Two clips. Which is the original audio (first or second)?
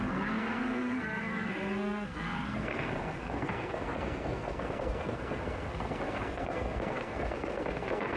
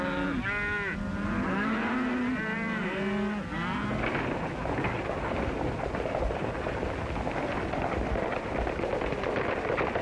second